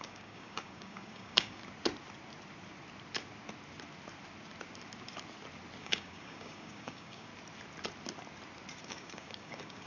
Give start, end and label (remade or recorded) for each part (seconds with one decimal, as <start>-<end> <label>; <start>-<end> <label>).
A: 0.0-1.6 remade; 1.6-5.8 recorded; 5.8-7.3 remade; 7.3-8.8 recorded; 8.8-9.9 remade